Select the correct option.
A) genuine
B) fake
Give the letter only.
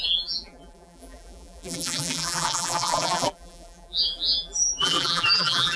B